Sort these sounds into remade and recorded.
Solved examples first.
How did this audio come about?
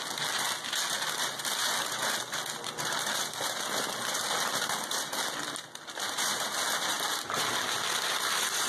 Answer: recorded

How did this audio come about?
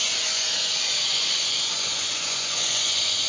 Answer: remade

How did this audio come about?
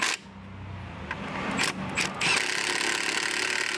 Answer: recorded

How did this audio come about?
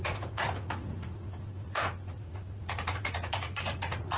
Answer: remade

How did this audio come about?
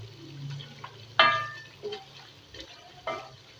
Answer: recorded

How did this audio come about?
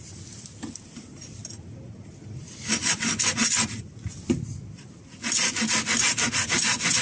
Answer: recorded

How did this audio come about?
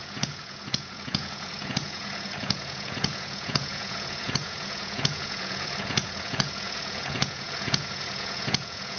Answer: remade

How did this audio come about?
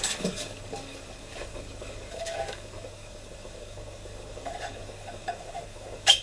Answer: remade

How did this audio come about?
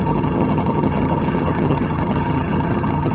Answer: remade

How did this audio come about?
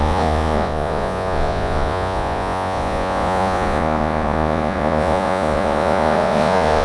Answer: remade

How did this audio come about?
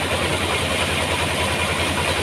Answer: recorded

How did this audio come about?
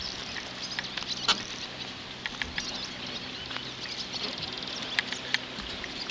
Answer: recorded